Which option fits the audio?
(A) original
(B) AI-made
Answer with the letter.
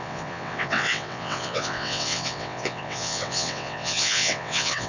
B